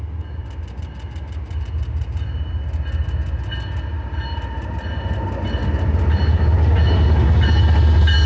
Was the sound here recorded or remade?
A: recorded